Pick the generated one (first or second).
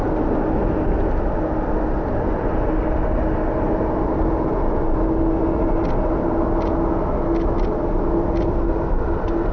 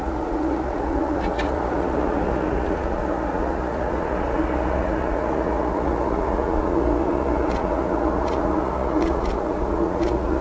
second